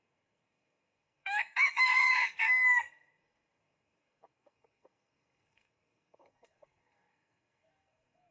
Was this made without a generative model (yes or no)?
no